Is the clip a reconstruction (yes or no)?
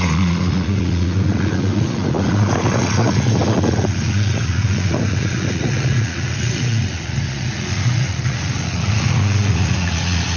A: yes